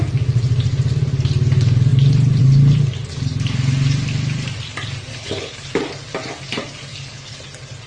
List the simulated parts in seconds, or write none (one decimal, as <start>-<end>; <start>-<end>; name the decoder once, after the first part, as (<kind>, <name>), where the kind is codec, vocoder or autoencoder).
5.1-5.7 (codec, HILCodec); 6.9-7.4